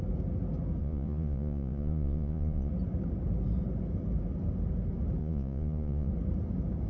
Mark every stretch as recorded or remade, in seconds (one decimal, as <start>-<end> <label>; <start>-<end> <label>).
0.0-0.8 recorded; 0.8-2.7 remade; 2.7-5.2 recorded; 5.2-6.1 remade; 6.1-6.9 recorded